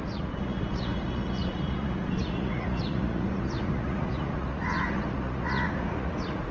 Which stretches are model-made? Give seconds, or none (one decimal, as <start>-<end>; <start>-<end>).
0.0-6.5